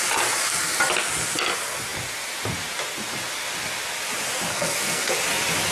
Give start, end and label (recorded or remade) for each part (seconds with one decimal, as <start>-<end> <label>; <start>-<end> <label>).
0.0-4.5 recorded; 4.5-5.1 remade; 5.1-5.7 recorded